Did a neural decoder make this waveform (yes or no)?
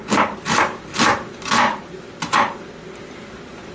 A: yes